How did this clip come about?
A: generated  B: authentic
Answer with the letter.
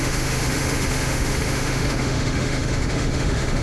A